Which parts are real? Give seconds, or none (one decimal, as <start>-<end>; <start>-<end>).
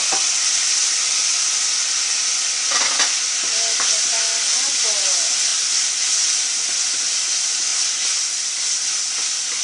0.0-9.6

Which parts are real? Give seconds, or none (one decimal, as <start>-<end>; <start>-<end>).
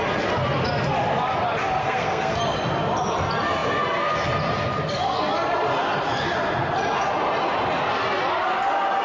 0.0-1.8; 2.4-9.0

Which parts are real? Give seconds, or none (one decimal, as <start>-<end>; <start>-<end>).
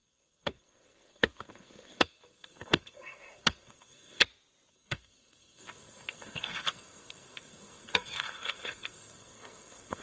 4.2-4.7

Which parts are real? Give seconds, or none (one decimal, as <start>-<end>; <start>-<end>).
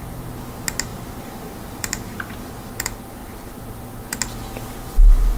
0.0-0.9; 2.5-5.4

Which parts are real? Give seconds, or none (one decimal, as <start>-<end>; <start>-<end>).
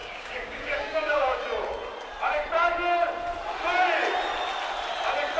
1.4-5.4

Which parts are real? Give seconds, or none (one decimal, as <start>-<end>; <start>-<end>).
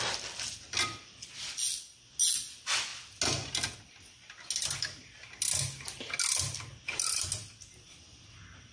0.0-8.7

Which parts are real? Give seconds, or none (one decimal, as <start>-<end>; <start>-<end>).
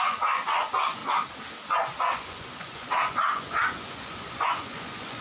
1.0-2.0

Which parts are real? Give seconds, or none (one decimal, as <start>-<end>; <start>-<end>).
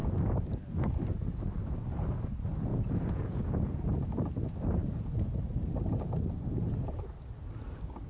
0.0-2.7; 3.7-8.1